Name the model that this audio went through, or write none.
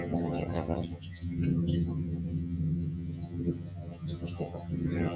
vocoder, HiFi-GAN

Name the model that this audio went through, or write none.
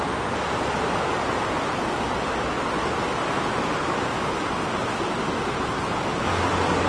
none